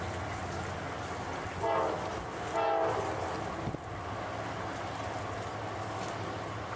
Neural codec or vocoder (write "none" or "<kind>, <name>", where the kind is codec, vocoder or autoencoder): none